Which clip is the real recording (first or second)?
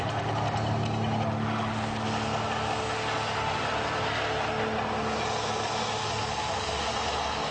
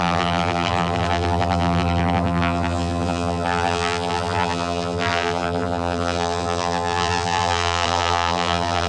first